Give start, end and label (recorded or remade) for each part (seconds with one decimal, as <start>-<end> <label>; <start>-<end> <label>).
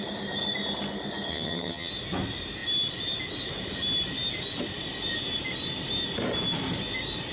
0.0-1.3 recorded; 1.3-1.9 remade; 1.9-7.3 recorded